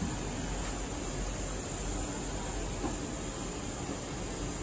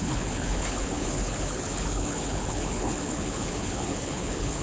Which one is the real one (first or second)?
first